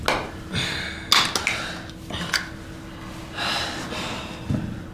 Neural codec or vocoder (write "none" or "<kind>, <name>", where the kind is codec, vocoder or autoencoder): none